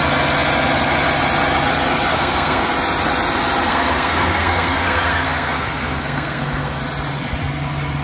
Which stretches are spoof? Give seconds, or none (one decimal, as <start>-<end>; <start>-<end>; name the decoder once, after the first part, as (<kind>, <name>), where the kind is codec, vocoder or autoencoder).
2.1-2.7 (codec, SNAC); 3.7-6.8